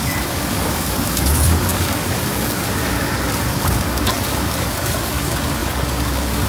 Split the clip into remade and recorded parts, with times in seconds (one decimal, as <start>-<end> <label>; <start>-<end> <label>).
0.0-6.5 remade